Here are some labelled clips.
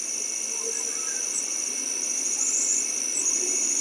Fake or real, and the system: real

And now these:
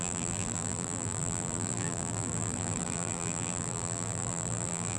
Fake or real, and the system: fake, vocoder, BigVGAN v2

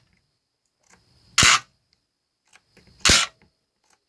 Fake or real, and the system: real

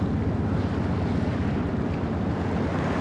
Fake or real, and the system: real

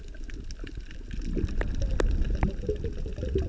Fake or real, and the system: real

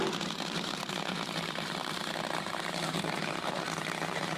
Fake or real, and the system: fake, vocoder, BigVGAN v2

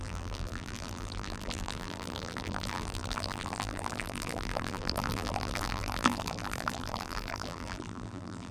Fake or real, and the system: fake, vocoder, BigVGAN v2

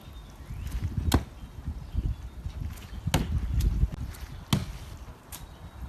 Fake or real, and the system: real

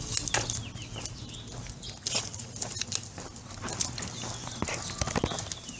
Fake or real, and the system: real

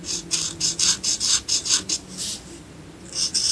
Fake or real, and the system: real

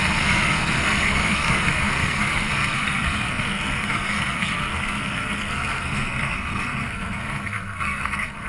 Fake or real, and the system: fake, codec, SNAC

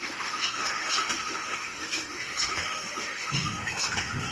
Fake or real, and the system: fake, autoencoder, DAC-VAE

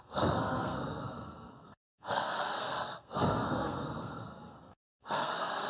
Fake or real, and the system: fake, codec, SNAC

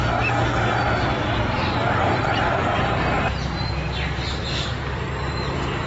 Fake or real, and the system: real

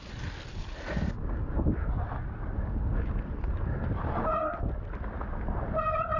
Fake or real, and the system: real